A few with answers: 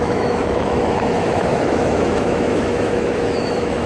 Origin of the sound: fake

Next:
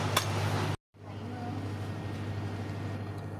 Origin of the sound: real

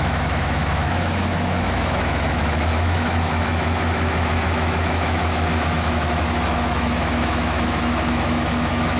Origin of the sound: fake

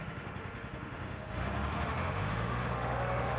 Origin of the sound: fake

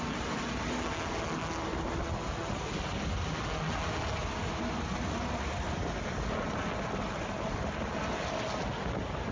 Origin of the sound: real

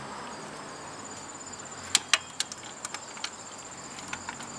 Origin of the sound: real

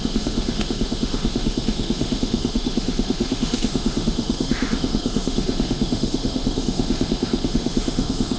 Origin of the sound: fake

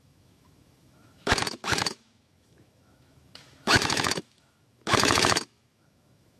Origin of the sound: fake